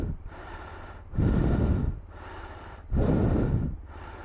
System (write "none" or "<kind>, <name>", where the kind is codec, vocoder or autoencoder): vocoder, BigVGAN v2